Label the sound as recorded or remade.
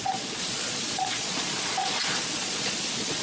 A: remade